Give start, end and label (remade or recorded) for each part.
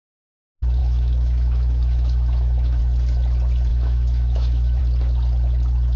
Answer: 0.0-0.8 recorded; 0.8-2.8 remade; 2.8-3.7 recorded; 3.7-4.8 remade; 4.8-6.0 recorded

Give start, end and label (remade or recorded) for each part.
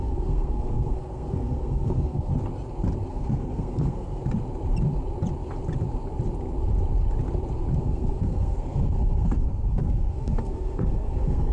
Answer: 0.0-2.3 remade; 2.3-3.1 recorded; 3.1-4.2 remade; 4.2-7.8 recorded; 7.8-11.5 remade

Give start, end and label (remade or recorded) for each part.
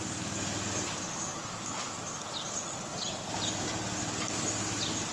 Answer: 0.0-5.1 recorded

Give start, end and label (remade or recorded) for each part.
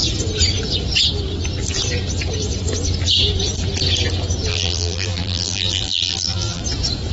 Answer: 0.0-4.5 recorded; 4.5-6.6 remade; 6.6-7.1 recorded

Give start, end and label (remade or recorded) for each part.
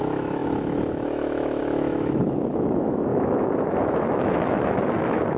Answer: 0.0-5.4 remade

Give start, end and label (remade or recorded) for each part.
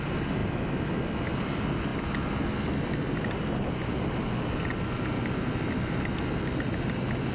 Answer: 0.0-7.3 recorded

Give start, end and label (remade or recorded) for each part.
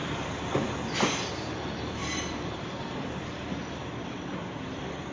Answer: 0.0-2.0 recorded; 2.0-5.1 remade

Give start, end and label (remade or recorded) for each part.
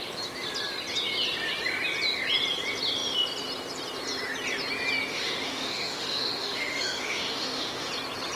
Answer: 0.0-5.1 recorded; 5.1-7.9 remade; 7.9-8.4 recorded